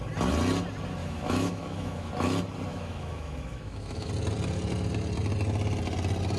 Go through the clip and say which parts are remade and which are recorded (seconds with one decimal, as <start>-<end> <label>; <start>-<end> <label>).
0.0-1.0 recorded; 1.0-2.1 remade; 2.1-2.7 recorded; 2.7-4.1 remade; 4.1-6.4 recorded